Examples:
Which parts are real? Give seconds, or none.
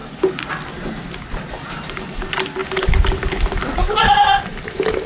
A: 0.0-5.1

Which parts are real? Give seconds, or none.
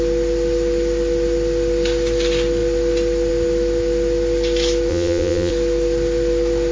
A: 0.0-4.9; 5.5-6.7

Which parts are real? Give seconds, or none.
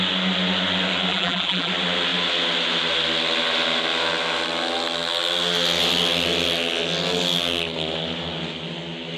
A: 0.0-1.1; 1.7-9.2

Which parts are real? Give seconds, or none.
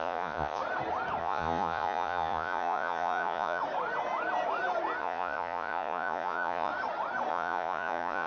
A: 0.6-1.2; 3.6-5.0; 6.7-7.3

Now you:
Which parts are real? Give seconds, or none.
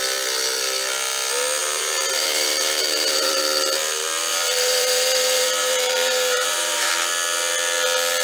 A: 0.0-1.6; 3.4-4.3; 6.9-8.2